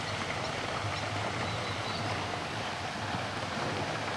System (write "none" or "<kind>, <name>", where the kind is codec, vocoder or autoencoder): vocoder, BigVGAN v2